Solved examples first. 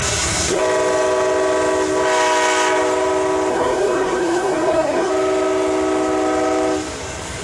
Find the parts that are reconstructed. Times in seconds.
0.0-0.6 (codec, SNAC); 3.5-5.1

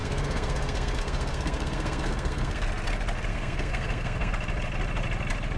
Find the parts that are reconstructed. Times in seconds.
0.0-2.7 (codec, SNAC); 3.3-4.3